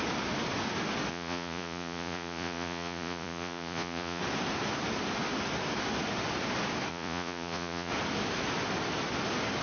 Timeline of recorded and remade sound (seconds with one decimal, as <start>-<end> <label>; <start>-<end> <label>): 0.0-1.1 recorded; 1.1-4.2 remade; 4.2-6.9 recorded; 6.9-7.9 remade; 7.9-9.6 recorded